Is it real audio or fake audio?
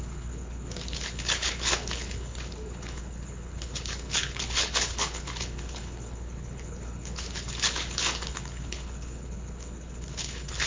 fake